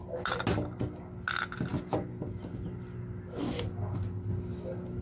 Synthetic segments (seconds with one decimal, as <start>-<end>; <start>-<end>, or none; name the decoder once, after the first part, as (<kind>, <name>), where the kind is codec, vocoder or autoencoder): none